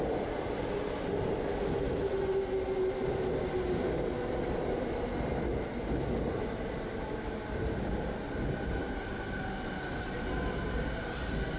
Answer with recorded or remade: recorded